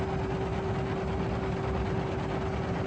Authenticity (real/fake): real